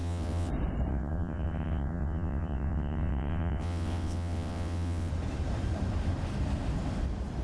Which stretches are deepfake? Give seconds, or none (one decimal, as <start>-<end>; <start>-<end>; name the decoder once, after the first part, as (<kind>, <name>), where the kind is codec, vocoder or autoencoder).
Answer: 0.0-0.5 (vocoder, WaveNeXt); 0.9-5.1